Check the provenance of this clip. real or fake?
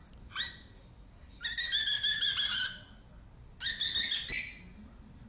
real